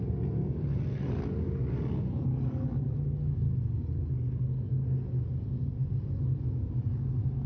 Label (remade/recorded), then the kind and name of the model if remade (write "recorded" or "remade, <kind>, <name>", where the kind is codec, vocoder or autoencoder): recorded